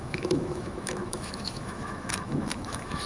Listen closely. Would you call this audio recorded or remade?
remade